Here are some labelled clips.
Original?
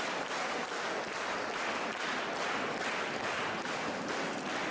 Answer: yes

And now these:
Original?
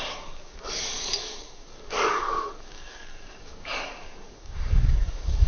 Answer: no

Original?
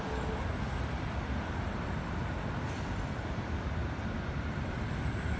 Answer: yes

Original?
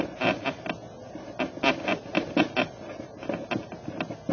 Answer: yes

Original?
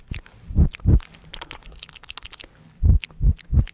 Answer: yes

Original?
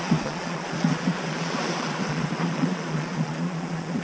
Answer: no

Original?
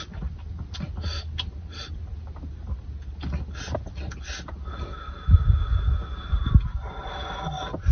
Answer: yes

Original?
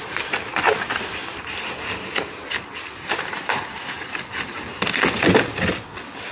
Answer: yes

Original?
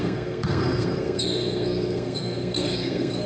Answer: no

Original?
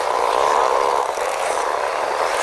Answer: no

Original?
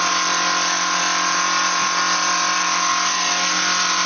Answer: yes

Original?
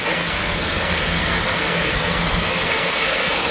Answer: no